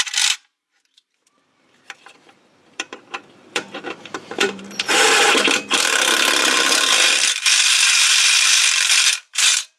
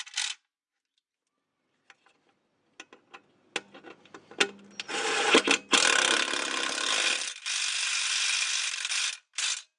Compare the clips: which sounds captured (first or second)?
second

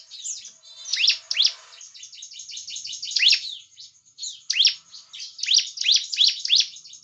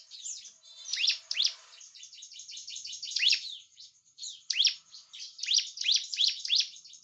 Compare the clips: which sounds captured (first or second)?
first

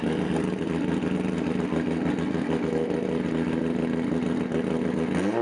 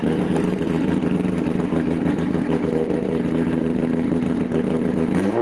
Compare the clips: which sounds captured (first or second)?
first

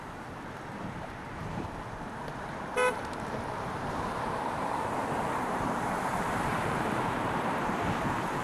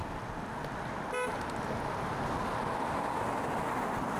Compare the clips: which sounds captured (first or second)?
second